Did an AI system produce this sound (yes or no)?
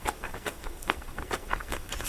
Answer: yes